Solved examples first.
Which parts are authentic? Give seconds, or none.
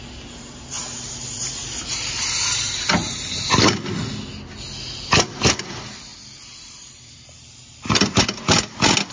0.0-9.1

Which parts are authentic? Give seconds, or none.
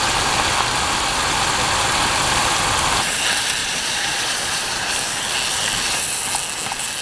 0.0-3.6; 4.9-7.0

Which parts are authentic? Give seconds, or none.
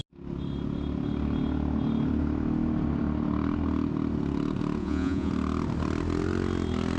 0.0-4.8; 5.3-7.0